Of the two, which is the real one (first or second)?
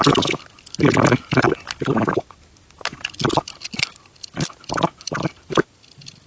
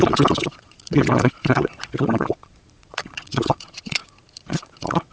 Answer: first